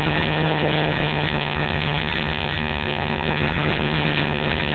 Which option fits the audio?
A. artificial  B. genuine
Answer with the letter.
A